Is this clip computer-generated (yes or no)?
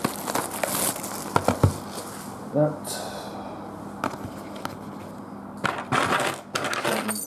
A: no